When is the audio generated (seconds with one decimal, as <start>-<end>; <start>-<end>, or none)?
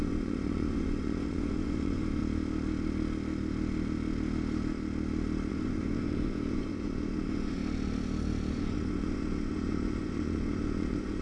0.0-2.2; 5.5-7.6; 8.5-11.2